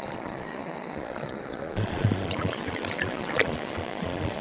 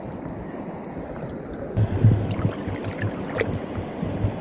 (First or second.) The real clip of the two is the second